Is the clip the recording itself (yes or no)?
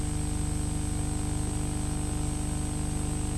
yes